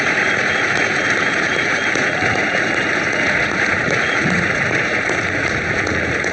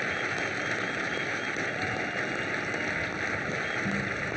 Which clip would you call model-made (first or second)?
first